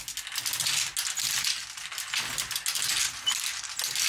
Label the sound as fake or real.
real